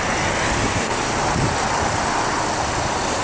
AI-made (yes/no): no